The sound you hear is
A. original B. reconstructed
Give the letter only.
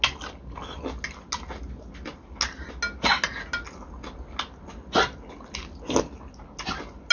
A